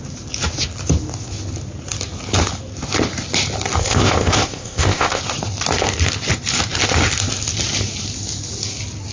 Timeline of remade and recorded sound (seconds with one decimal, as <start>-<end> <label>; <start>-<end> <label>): 0.0-3.8 recorded; 3.8-5.2 remade; 5.2-9.1 recorded